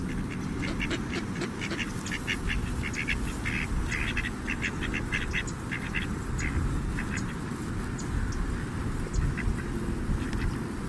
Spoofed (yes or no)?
no